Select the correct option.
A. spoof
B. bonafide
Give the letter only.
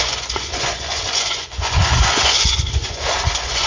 A